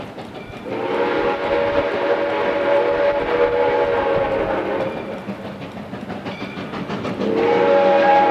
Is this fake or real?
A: real